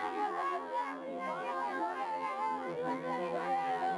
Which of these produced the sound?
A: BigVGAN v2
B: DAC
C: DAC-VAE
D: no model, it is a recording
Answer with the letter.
A